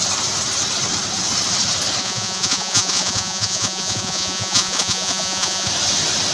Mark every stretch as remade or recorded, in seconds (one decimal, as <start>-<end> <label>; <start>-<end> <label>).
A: 0.0-2.0 recorded; 2.0-5.7 remade; 5.7-6.3 recorded